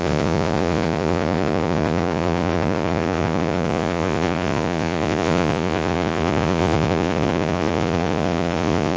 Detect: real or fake fake